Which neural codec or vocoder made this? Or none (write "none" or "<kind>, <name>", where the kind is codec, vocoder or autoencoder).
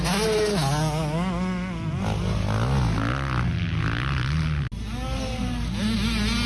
none